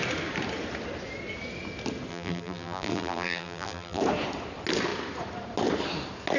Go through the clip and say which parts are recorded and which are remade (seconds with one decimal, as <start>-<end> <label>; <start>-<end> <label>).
0.0-2.1 recorded; 2.1-4.0 remade; 4.0-6.4 recorded